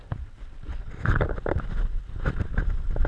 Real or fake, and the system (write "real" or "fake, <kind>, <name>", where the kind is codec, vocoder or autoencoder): real